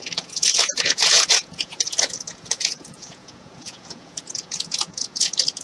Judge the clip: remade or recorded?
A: remade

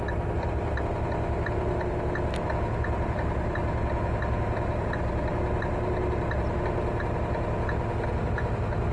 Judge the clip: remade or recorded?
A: recorded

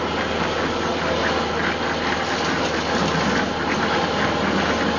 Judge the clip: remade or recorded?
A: recorded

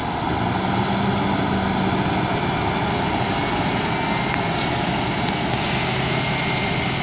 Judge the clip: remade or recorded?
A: recorded